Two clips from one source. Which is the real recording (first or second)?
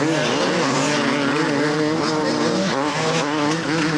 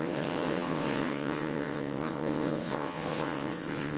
first